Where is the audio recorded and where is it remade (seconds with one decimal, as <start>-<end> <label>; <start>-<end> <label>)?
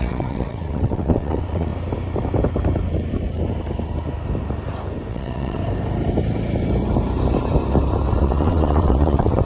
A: 0.0-1.7 remade; 1.7-5.1 recorded; 5.1-5.6 remade; 5.6-8.2 recorded; 8.2-9.5 remade